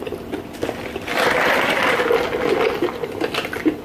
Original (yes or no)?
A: yes